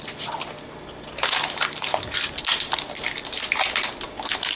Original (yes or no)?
yes